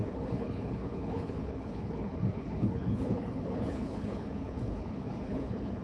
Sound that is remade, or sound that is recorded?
remade